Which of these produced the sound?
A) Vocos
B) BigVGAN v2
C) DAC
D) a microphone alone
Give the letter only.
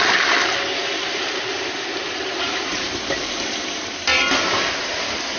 D